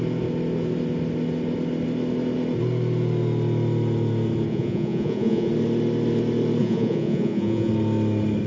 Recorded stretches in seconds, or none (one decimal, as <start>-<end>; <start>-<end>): 0.0-4.5; 5.5-6.6; 7.7-8.5